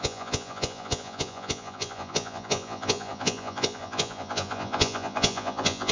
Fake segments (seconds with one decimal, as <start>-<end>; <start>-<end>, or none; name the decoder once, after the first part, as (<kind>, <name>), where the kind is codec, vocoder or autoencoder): 0.0-5.9 (vocoder, Vocos)

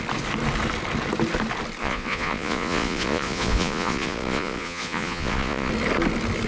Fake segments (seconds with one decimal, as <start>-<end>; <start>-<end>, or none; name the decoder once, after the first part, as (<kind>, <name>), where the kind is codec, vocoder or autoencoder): 1.8-5.7 (vocoder, Vocos)

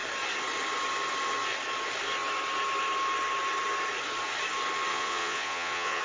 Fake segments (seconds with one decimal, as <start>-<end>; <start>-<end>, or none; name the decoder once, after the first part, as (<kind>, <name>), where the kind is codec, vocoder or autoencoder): 4.9-6.0 (vocoder, Vocos)